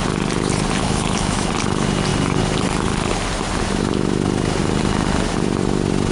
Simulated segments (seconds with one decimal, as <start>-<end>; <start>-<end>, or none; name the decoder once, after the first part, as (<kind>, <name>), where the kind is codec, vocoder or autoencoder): 0.8-1.5 (autoencoder, DAC-VAE)